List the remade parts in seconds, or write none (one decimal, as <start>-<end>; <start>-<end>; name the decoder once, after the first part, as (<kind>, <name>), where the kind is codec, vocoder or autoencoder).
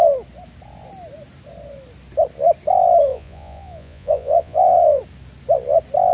3.1-5.0 (vocoder, Vocos)